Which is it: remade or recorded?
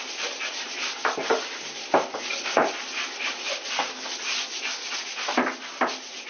recorded